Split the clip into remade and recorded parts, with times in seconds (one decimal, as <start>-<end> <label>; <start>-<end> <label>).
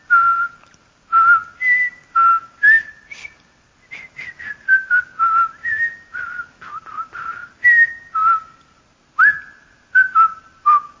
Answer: 0.0-11.0 recorded